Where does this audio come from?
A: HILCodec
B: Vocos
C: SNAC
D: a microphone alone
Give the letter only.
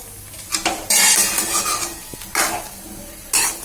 D